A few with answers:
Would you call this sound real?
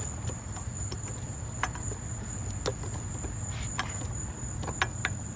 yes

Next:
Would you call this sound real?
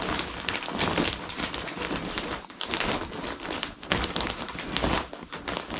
yes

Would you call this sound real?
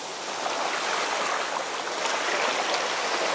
yes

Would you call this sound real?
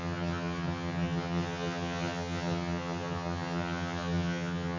no